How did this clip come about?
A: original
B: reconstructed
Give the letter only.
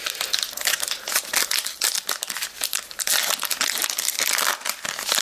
A